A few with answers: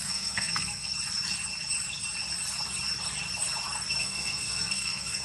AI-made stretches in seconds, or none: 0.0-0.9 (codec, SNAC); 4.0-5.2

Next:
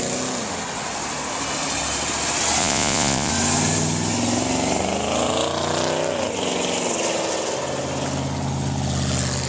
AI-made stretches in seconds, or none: 2.6-3.3 (vocoder, Vocos)

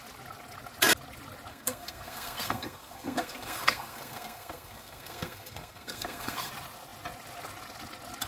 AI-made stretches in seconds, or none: 1.5-6.5 (codec, SNAC)

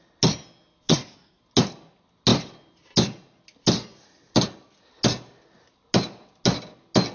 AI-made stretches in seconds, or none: 0.9-1.4 (codec, SNAC)